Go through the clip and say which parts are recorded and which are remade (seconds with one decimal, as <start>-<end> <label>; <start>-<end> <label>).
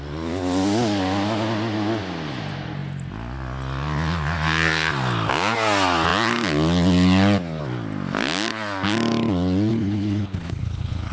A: 0.0-9.7 recorded; 9.7-11.1 remade